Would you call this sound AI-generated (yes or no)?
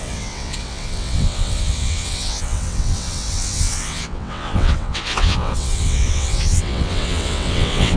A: yes